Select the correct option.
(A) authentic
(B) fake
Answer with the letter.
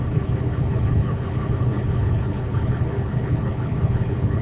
B